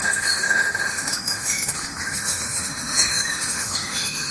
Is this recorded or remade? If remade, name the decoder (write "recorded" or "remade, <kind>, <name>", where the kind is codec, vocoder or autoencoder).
remade, autoencoder, DAC-VAE